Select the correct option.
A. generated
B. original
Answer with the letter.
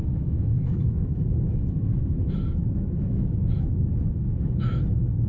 A